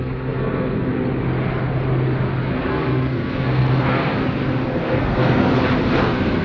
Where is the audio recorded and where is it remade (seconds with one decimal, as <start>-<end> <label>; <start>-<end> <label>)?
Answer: 0.0-0.9 remade; 0.9-2.5 recorded; 2.5-4.2 remade; 4.2-4.8 recorded; 4.8-5.5 remade; 5.5-6.0 recorded; 6.0-6.4 remade